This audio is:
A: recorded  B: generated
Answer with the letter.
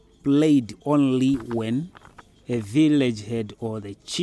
A